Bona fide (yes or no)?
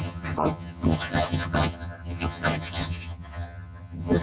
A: no